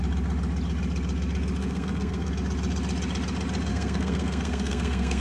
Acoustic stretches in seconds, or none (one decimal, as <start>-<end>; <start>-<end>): 0.0-1.6; 2.3-3.7